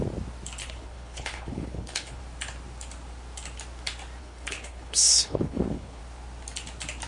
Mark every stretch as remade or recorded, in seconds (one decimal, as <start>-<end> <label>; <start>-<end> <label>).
0.0-0.6 recorded; 0.6-2.2 remade; 2.2-4.2 recorded; 4.2-6.0 remade; 6.0-7.1 recorded